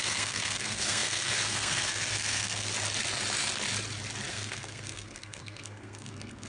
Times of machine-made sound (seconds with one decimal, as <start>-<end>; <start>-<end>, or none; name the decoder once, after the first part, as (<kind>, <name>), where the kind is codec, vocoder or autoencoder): 0.0-2.7 (codec, SNAC); 4.3-6.5

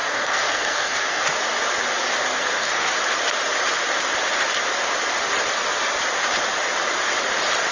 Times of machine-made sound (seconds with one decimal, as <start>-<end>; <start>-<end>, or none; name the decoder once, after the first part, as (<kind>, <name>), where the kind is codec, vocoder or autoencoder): 0.0-1.2 (codec, SNAC); 2.2-2.9

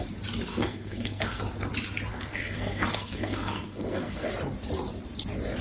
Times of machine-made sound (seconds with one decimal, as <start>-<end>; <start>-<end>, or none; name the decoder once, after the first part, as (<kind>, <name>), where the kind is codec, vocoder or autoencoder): 0.5-1.4 (codec, SNAC); 2.1-4.3

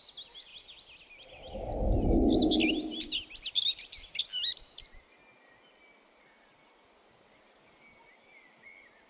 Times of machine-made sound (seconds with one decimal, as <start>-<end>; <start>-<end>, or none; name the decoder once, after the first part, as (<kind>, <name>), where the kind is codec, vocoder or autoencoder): 0.5-5.0 (vocoder, BigVGAN v2)

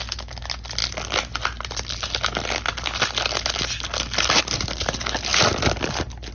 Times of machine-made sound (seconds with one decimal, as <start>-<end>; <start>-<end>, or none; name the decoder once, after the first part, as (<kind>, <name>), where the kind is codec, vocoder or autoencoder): none